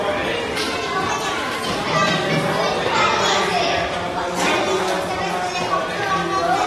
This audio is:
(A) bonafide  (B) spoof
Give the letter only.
A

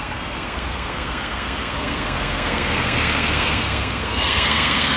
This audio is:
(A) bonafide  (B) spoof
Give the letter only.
B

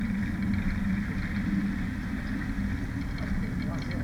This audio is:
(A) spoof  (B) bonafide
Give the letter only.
B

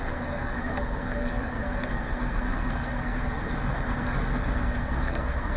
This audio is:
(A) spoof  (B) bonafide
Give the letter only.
A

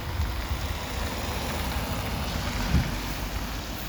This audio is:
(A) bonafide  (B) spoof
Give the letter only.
A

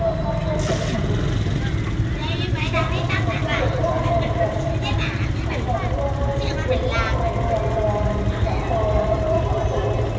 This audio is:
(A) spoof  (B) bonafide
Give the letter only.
B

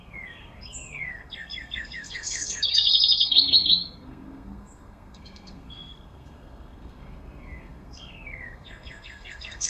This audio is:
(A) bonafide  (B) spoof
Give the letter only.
B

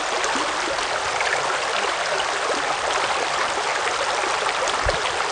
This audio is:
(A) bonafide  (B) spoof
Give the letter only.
A